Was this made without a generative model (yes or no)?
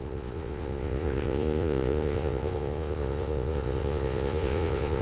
no